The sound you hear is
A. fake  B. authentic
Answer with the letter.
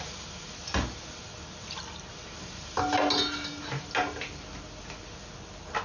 B